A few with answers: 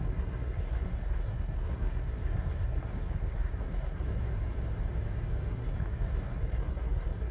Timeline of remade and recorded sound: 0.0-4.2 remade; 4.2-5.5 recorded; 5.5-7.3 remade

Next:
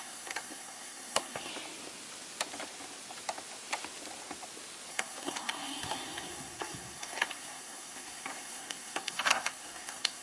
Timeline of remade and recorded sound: 0.0-1.5 remade; 1.5-4.9 recorded; 4.9-10.2 remade

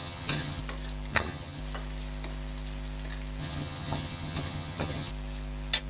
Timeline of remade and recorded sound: 0.0-0.6 remade; 0.6-1.1 recorded; 1.1-1.6 remade; 1.6-3.4 recorded; 3.4-5.1 remade; 5.1-5.9 recorded

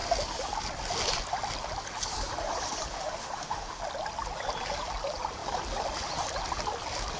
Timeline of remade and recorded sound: 0.0-2.9 recorded; 2.9-3.8 remade; 3.8-7.2 recorded